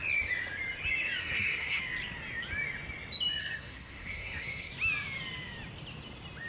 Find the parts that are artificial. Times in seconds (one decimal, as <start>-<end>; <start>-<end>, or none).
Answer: 1.2-1.8; 3.4-4.7

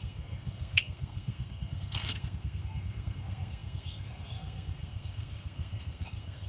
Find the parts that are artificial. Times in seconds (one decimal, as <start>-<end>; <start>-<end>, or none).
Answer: 0.0-6.5